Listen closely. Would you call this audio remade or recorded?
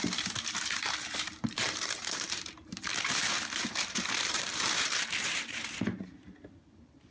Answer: remade